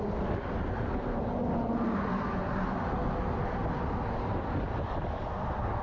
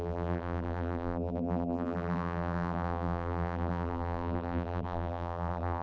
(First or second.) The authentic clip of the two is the first